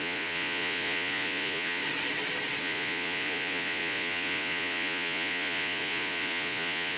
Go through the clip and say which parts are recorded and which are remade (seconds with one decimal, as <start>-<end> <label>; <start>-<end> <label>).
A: 0.0-1.8 remade; 1.8-2.6 recorded; 2.6-7.0 remade